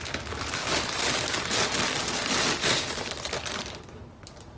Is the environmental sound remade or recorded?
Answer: recorded